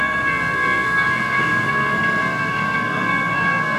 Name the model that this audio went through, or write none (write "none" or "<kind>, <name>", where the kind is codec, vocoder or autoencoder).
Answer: codec, SNAC